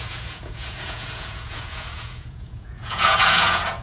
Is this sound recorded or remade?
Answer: remade